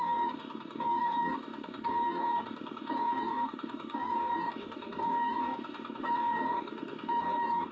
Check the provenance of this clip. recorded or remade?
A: remade